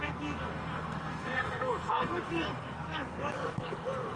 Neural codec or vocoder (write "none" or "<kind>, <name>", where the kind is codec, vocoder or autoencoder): codec, SNAC